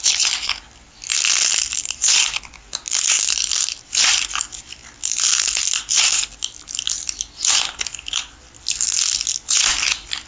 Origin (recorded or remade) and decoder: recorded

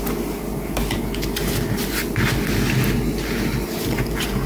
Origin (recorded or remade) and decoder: recorded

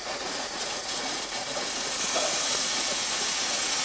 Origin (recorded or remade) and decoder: remade, vocoder, Vocos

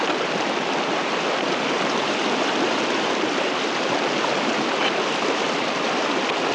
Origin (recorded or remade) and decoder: remade, vocoder, BigVGAN v2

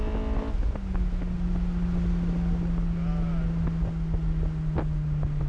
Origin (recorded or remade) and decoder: recorded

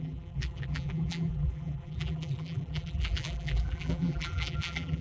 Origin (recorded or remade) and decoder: remade, vocoder, BigVGAN v2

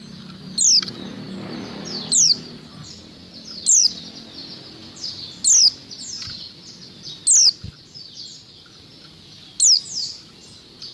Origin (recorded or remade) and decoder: recorded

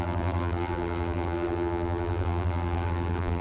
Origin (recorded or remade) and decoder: remade, vocoder, BigVGAN v2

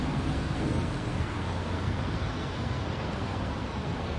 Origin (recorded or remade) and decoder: remade, codec, SNAC